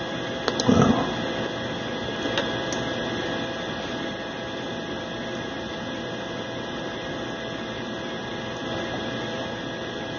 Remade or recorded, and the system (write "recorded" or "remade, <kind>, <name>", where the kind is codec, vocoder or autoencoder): recorded